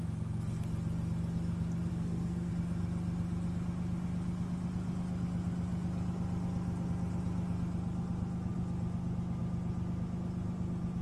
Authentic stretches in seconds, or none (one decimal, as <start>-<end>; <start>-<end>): 0.0-1.9; 2.5-11.0